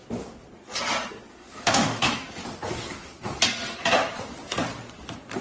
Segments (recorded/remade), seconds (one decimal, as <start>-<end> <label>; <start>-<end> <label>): 0.0-1.3 recorded; 1.3-2.0 remade; 2.0-5.4 recorded